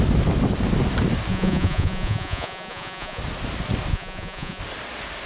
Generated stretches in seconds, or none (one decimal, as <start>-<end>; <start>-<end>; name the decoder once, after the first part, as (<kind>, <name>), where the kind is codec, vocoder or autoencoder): 1.3-3.2 (vocoder, Vocos); 3.9-4.6